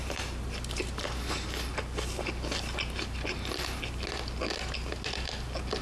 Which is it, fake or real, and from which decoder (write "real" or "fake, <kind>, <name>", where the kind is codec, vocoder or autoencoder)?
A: real